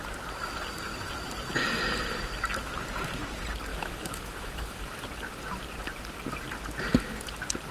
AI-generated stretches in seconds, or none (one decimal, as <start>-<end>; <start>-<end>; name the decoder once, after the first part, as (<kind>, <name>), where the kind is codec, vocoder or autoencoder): 3.7-4.9 (autoencoder, DAC-VAE)